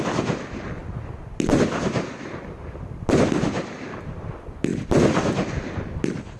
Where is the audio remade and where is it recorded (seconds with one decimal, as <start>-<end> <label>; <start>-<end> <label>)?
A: 0.0-6.4 recorded